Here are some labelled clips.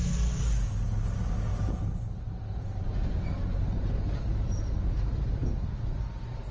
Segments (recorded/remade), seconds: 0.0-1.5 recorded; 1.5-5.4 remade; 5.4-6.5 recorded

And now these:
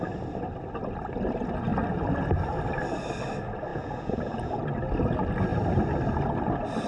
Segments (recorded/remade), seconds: 0.0-3.7 recorded; 3.7-4.6 remade; 4.6-6.9 recorded